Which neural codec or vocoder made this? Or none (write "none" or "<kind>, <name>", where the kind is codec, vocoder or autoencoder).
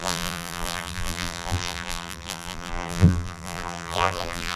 vocoder, BigVGAN v2